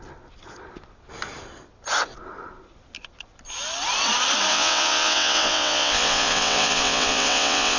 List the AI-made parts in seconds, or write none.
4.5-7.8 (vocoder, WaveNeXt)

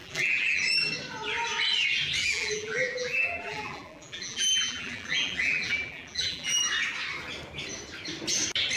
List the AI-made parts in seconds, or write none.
0.0-0.6 (vocoder, BigVGAN v2); 2.2-6.6